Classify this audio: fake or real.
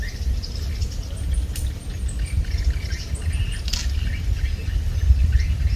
real